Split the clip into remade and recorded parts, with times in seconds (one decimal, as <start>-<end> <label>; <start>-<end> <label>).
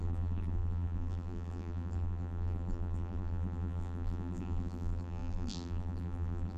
0.0-6.6 remade